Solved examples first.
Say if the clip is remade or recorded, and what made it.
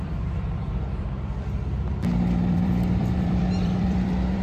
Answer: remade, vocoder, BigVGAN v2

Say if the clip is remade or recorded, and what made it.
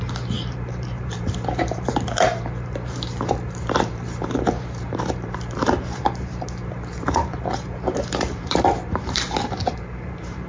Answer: remade, vocoder, BigVGAN v2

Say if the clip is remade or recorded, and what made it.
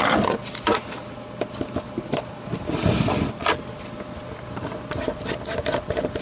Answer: recorded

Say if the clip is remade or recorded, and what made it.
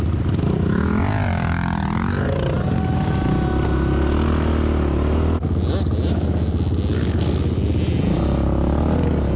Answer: recorded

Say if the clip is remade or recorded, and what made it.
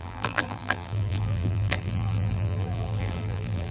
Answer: remade, vocoder, BigVGAN v2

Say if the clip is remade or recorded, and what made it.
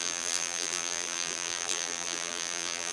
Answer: remade, vocoder, BigVGAN v2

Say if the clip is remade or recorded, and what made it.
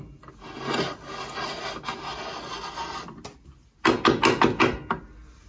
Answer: recorded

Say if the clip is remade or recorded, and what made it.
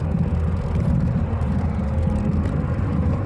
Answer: recorded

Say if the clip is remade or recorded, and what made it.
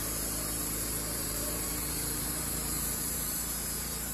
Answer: remade, vocoder, BigVGAN v2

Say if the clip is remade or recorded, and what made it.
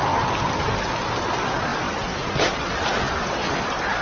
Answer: recorded